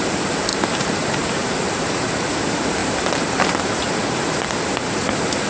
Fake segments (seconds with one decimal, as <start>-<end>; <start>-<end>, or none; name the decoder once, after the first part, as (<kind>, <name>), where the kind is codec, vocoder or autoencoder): 0.5-2.1 (vocoder, BigVGAN v2); 2.8-3.9